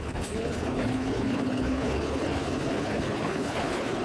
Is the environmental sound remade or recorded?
remade